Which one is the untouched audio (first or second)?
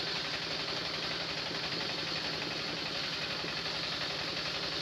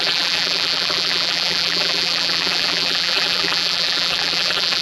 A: first